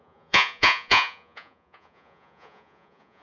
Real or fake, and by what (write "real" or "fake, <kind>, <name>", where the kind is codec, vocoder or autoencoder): fake, vocoder, Vocos